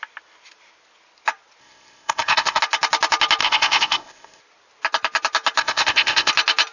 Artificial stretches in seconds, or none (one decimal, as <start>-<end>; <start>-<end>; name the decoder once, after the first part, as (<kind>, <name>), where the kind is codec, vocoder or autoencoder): 1.6-2.6 (codec, ZipCodec); 3.4-4.4; 5.6-6.3